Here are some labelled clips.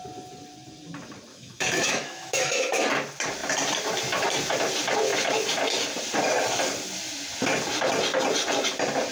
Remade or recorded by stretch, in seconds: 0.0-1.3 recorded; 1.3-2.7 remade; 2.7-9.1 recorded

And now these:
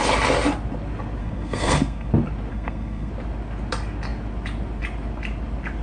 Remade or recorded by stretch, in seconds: 0.0-1.2 recorded; 1.2-2.1 remade; 2.1-2.5 recorded; 2.5-3.1 remade; 3.1-5.8 recorded

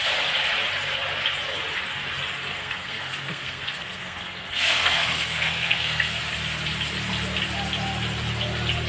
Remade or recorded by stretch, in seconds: 0.0-2.5 recorded; 2.5-6.2 remade; 6.2-8.9 recorded